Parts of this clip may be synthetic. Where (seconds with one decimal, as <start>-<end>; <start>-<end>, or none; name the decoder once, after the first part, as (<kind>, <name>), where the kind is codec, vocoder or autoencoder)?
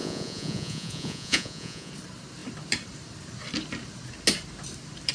0.0-1.9 (vocoder, Vocos)